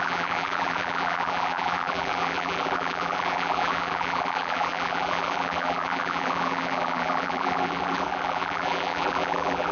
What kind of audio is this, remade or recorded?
remade